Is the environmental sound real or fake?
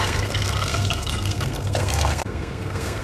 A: fake